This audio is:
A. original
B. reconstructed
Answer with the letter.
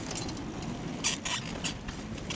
A